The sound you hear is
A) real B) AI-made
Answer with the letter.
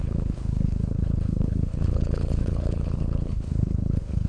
B